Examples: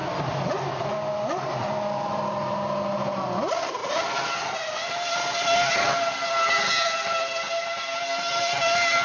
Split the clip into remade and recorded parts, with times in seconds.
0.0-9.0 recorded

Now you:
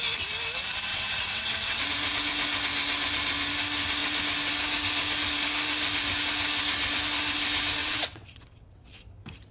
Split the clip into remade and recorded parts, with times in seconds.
0.0-0.9 recorded; 0.9-1.8 remade; 1.8-7.8 recorded; 7.8-9.0 remade; 9.0-9.5 recorded

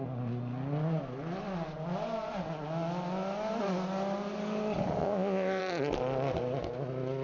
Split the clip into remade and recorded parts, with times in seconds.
0.0-5.0 recorded; 5.0-5.6 remade; 5.6-7.2 recorded